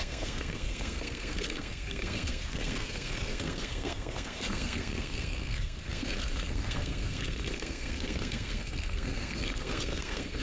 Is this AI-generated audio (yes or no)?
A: yes